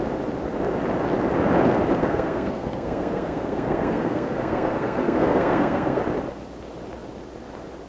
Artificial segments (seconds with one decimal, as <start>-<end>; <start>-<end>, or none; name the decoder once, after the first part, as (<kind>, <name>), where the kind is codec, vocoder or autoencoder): 2.0-6.0 (codec, SNAC)